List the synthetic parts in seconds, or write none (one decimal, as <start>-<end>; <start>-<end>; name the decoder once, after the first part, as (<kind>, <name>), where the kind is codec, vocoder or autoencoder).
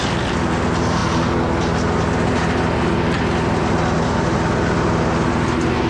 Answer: none